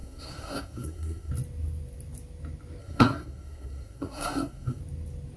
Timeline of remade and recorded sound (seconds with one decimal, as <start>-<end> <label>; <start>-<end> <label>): 0.0-1.3 remade; 1.3-2.8 recorded; 2.8-4.8 remade; 4.8-5.4 recorded